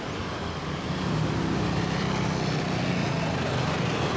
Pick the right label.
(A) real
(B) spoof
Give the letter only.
A